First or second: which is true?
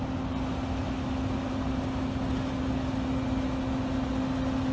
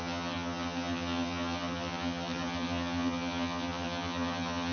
first